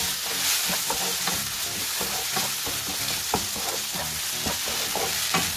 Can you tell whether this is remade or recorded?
recorded